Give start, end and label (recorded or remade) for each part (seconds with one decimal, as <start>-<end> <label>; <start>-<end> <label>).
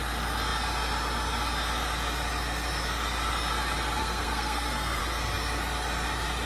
0.0-4.0 recorded; 4.0-5.0 remade; 5.0-6.5 recorded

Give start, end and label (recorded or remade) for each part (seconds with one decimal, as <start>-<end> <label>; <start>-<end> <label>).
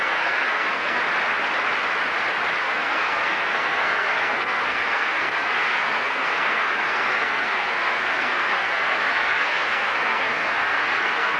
0.0-1.0 remade; 1.0-2.6 recorded; 2.6-11.4 remade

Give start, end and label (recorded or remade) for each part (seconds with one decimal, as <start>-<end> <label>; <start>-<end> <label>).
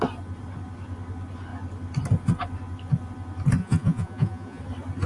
0.0-3.6 recorded; 3.6-4.6 remade; 4.6-5.1 recorded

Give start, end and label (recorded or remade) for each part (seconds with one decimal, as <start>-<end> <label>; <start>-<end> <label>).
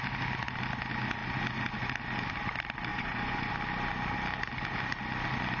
0.0-2.9 recorded; 2.9-3.5 remade; 3.5-5.6 recorded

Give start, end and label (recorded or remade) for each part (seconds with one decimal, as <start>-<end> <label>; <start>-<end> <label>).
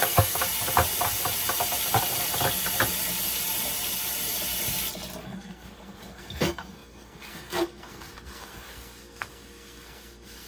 0.0-0.4 remade; 0.4-5.2 recorded; 5.2-10.5 remade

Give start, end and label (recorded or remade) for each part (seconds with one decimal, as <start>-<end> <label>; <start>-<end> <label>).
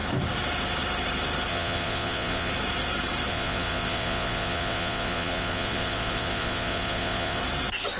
0.0-1.5 recorded; 1.5-2.5 remade; 2.5-3.3 recorded; 3.3-7.4 remade; 7.4-8.0 recorded